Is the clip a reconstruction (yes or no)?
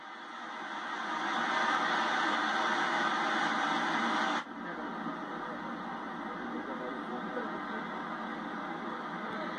no